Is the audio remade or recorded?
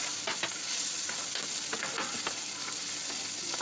recorded